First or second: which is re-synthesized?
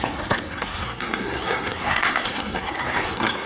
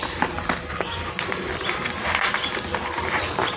first